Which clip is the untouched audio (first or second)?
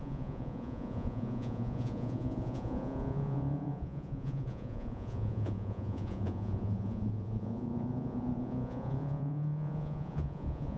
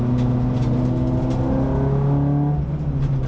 second